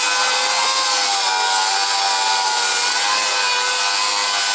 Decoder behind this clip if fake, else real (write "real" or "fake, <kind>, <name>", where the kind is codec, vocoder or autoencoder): real